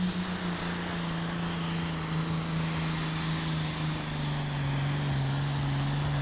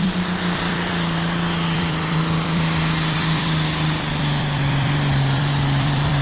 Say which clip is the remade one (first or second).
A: second